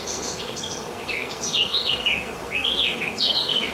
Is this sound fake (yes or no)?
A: yes